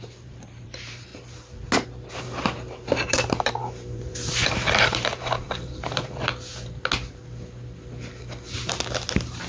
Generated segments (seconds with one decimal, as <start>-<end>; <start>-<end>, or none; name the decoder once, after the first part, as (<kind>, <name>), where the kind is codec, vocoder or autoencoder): 0.0-1.1 (vocoder, BigVGAN v2); 2.1-6.3